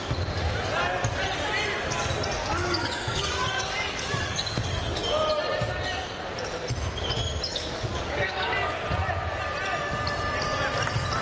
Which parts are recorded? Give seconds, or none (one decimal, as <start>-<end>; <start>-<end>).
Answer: 0.0-2.4; 5.1-7.5; 8.5-11.2